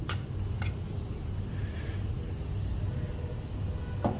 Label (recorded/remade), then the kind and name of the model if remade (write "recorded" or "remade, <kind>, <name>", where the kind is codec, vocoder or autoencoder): recorded